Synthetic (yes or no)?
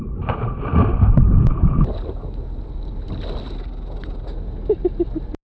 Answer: no